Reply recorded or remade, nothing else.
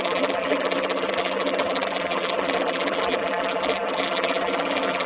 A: remade